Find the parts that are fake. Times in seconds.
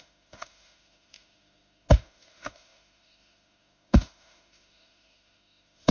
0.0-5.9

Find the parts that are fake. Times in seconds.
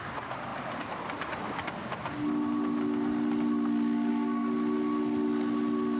none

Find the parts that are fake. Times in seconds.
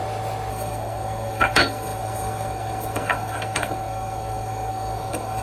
0.5-5.4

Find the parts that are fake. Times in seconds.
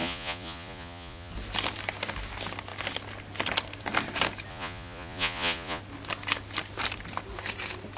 0.0-1.3; 4.5-5.8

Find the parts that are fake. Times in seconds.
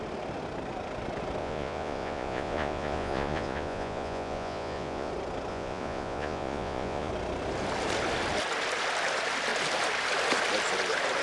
1.4-5.1; 5.5-7.1